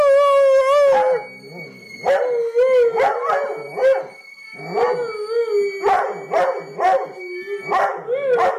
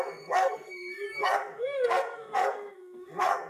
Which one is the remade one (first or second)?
second